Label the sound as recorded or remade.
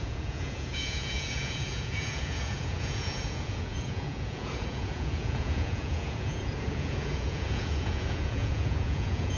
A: remade